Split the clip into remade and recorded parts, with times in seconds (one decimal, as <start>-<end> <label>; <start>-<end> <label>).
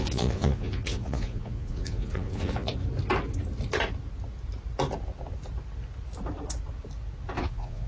0.0-2.7 remade; 2.7-7.4 recorded; 7.4-7.9 remade